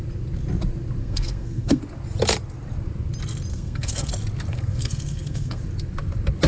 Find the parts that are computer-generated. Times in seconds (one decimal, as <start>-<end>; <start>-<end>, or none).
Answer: 1.0-1.8; 3.5-4.1; 4.5-5.6